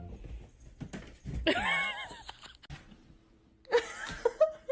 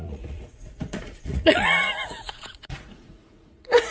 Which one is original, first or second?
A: first